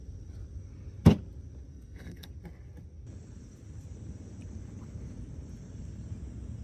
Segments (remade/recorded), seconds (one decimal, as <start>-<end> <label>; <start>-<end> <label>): 0.0-1.7 recorded; 1.7-2.3 remade; 2.3-6.6 recorded